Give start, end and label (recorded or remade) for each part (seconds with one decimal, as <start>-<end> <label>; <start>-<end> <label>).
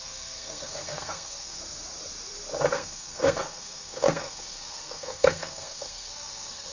0.0-1.6 remade; 1.6-2.7 recorded; 2.7-6.7 remade